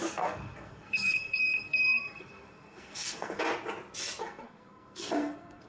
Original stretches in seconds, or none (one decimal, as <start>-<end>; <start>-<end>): 3.4-4.2